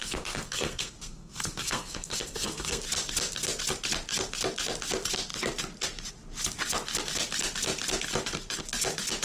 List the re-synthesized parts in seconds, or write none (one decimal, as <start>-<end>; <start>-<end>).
0.0-2.8